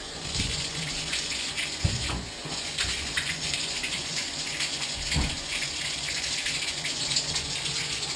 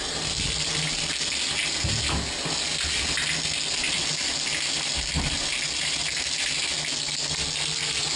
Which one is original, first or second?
second